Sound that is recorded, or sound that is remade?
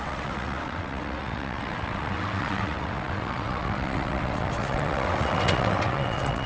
remade